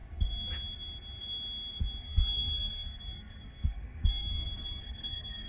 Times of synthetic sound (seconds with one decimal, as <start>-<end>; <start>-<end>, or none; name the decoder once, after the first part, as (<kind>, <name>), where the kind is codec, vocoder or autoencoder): 2.0-5.5 (codec, SNAC)